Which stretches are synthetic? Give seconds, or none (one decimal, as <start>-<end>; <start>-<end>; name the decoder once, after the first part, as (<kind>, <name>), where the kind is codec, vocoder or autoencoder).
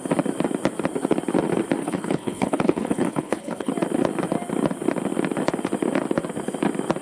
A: 1.8-3.7 (codec, HILCodec)